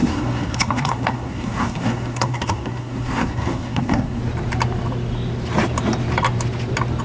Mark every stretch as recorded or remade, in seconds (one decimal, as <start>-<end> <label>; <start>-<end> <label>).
0.0-4.2 remade; 4.2-7.0 recorded